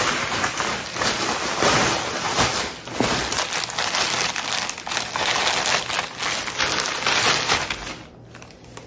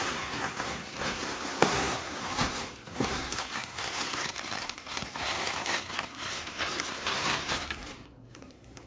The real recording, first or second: first